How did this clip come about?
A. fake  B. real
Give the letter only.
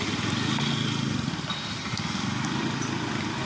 B